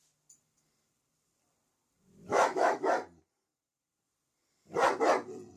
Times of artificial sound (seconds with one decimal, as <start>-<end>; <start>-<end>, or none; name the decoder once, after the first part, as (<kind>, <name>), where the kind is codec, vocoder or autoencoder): 2.3-2.9 (autoencoder, DAC-VAE)